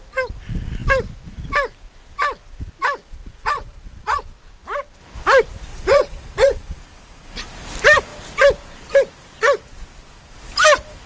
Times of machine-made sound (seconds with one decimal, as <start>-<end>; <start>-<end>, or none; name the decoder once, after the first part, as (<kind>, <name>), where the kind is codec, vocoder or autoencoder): 3.0-4.2 (vocoder, Vocos); 5.7-6.8